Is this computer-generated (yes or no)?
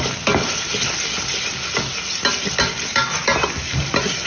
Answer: no